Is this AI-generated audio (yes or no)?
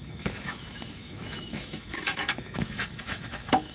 yes